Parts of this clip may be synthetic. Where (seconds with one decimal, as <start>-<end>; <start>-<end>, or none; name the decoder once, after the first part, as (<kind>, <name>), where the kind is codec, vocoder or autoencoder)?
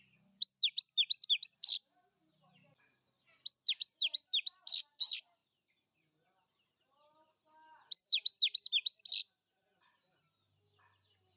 5.4-8.4 (vocoder, BigVGAN v2)